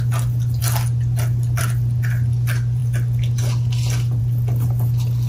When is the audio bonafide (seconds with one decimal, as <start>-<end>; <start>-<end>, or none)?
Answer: 0.0-5.3